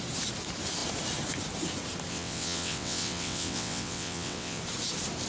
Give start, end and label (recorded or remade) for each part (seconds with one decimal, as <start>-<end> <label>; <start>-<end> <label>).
0.0-2.1 recorded; 2.1-4.6 remade; 4.6-5.3 recorded